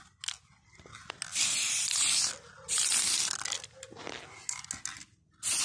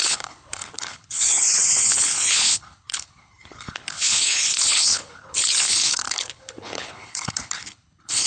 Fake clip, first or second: second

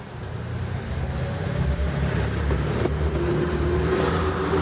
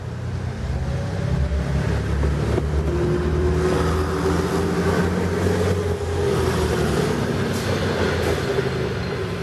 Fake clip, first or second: first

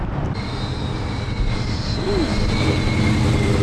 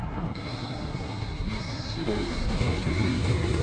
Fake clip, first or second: second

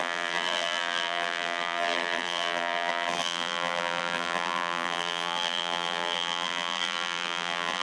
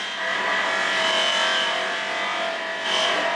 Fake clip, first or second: first